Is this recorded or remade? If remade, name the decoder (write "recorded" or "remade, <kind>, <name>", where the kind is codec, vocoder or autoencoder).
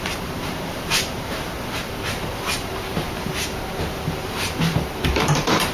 remade, vocoder, BigVGAN v2